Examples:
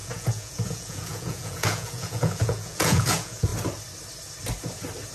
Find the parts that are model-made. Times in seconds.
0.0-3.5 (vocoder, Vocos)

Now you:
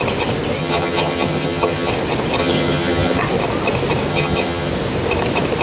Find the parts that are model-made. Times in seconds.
0.6-1.9 (vocoder, HiFi-GAN); 2.4-3.2; 4.1-4.7

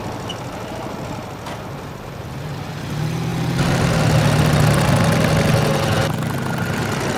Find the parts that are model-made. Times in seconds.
none